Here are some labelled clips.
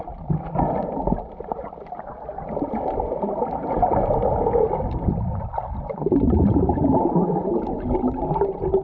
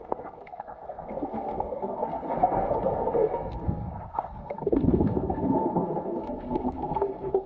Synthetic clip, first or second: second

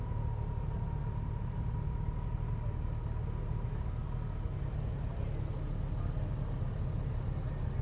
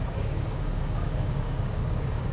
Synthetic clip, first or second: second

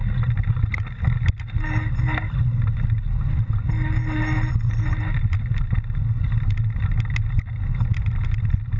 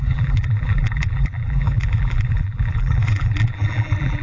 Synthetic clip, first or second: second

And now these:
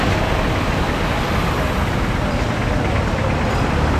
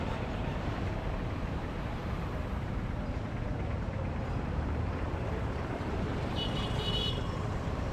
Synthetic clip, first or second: second